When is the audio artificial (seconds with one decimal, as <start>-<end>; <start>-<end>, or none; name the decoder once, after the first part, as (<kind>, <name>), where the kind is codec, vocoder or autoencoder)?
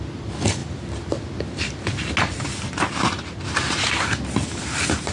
0.0-0.6 (vocoder, BigVGAN v2); 2.2-5.1